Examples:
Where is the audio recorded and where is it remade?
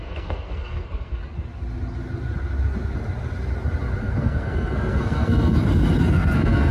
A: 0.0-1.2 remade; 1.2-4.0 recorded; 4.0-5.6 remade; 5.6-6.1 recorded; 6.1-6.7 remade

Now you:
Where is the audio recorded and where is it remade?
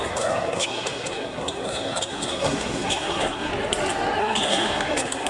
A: 0.0-3.5 remade; 3.5-4.2 recorded; 4.2-5.3 remade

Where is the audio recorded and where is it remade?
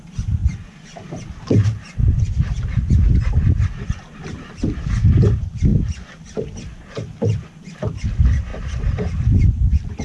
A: 0.0-5.7 recorded; 5.7-8.1 remade; 8.1-8.5 recorded; 8.5-10.0 remade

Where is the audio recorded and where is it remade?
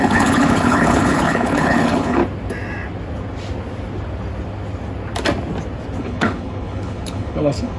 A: 0.0-2.2 remade; 2.2-6.0 recorded; 6.0-7.8 remade